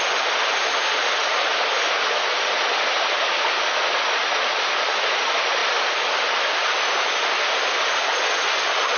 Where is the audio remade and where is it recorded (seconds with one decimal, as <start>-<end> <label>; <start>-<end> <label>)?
0.0-9.0 recorded

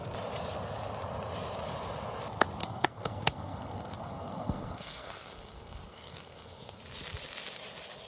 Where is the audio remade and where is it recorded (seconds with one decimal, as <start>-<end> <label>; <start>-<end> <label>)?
0.0-2.6 recorded; 2.6-6.8 remade; 6.8-8.1 recorded